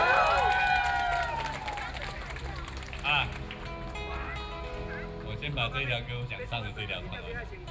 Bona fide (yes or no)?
yes